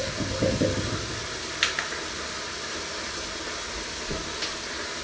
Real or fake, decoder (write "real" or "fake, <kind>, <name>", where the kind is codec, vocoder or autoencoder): real